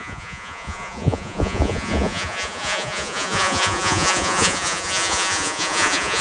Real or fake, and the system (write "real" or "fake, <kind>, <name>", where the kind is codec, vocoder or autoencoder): fake, vocoder, Vocos